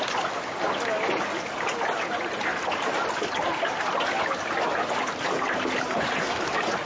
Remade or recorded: recorded